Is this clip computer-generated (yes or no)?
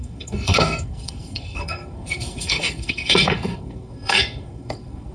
yes